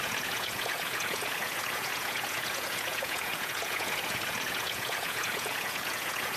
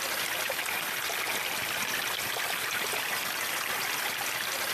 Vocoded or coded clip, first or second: first